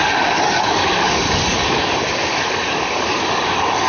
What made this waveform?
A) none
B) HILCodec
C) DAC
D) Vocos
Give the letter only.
C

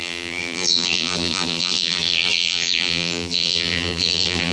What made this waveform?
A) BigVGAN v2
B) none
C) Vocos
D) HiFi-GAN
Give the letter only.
A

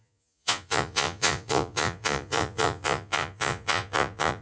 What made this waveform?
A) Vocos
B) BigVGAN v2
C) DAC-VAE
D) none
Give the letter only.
A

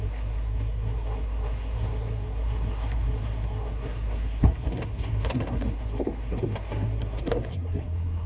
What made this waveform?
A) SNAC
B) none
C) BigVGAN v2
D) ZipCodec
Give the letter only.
A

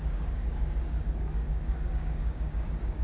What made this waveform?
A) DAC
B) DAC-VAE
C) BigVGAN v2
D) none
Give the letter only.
A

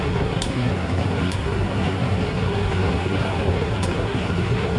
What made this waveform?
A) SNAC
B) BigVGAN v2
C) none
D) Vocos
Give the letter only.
A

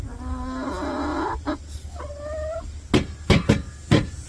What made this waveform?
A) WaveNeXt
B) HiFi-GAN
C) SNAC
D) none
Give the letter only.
D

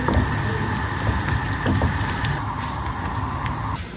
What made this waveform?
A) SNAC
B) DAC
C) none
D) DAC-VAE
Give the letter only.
C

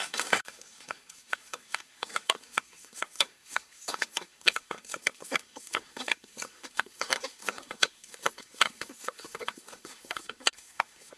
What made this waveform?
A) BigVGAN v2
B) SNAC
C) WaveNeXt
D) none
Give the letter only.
B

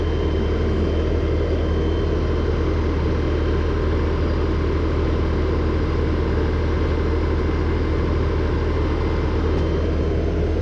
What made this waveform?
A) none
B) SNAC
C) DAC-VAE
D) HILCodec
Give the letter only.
A